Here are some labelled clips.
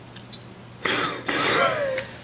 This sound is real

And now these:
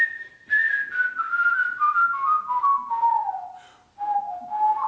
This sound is real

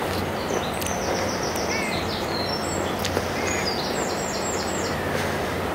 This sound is real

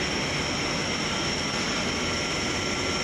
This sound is real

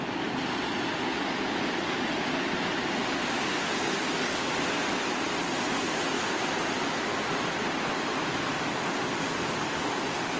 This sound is real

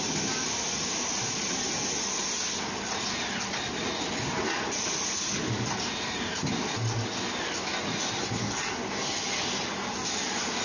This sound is real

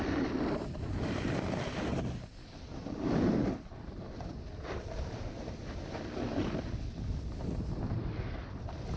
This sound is real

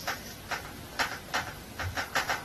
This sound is real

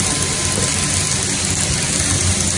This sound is real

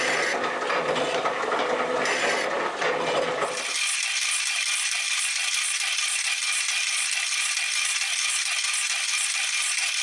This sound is real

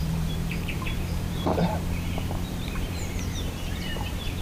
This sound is fake